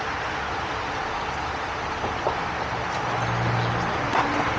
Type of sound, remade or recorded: recorded